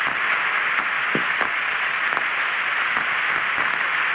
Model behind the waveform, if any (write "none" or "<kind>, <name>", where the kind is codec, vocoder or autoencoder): none